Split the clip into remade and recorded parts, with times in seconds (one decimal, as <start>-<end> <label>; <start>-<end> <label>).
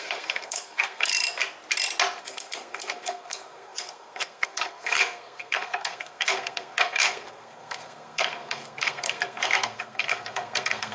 0.0-1.1 remade; 1.1-2.2 recorded; 2.2-10.9 remade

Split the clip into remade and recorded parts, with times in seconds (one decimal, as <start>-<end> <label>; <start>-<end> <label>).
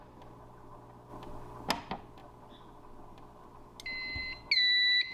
0.0-5.1 recorded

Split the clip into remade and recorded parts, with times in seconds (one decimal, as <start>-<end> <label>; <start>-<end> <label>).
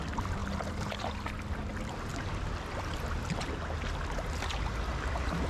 0.0-5.5 recorded